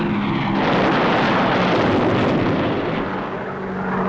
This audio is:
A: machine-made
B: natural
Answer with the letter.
B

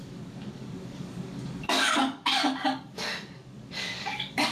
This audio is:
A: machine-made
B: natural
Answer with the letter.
A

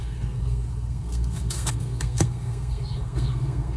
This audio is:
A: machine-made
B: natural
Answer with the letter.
A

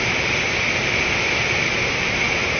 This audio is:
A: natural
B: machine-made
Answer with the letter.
A